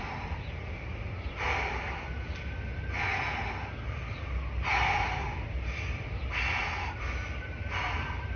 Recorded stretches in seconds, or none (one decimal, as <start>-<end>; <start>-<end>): 0.0-8.4